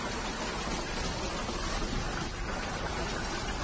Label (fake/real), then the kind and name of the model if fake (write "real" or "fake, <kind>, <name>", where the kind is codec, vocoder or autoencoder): real